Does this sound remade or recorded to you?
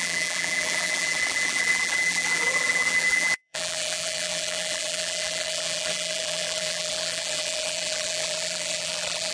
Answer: remade